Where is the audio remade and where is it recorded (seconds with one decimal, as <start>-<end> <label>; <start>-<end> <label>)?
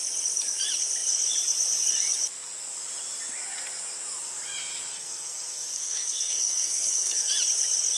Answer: 0.0-4.9 recorded; 4.9-7.3 remade; 7.3-8.0 recorded